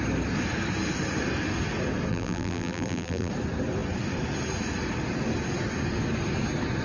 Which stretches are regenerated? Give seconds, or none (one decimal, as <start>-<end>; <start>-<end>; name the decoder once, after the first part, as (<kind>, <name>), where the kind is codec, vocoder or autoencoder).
2.1-3.3 (vocoder, BigVGAN v2)